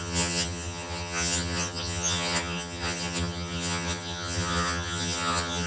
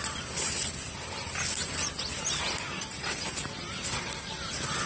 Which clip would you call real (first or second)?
second